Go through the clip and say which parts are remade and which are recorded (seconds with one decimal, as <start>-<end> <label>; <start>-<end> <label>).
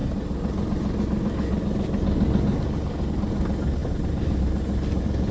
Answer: 0.0-5.3 recorded